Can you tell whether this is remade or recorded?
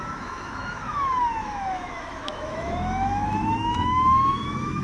remade